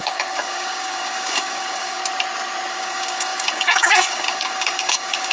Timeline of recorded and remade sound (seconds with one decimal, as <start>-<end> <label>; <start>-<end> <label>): 0.0-2.0 remade; 2.0-2.7 recorded; 2.7-5.3 remade